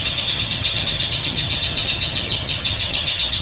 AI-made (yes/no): yes